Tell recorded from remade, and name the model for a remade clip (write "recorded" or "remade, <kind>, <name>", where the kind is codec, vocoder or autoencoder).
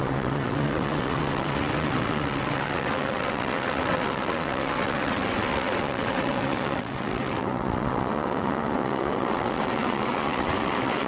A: remade, vocoder, WaveNeXt